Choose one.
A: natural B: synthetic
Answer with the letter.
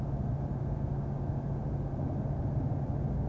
A